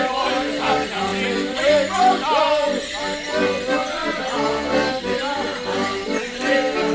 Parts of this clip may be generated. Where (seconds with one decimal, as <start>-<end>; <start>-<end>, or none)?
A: none